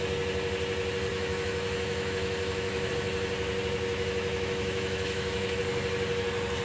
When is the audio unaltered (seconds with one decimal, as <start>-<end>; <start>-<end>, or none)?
0.0-1.1; 2.9-3.9; 5.6-6.6